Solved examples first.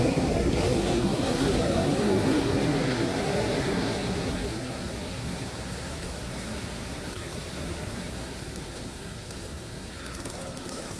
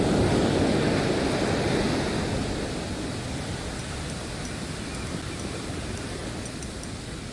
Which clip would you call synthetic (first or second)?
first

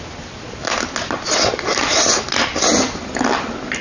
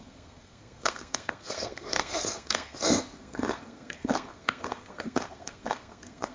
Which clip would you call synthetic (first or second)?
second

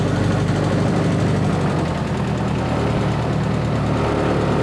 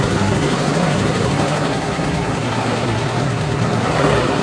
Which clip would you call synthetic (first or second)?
second